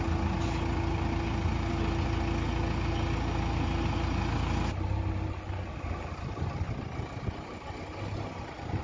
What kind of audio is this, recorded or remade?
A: recorded